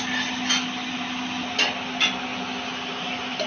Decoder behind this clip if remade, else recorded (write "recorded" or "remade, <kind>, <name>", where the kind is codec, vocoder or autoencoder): recorded